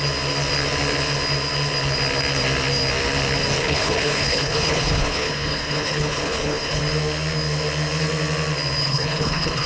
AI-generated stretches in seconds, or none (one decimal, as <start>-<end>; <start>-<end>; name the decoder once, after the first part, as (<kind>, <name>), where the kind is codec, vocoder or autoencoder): 3.6-6.8 (codec, HILCodec); 8.8-9.7